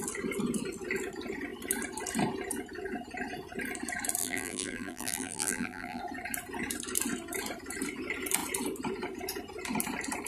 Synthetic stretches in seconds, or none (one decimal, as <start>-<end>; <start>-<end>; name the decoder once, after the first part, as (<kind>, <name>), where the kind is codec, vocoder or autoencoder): 4.2-6.0 (vocoder, BigVGAN v2)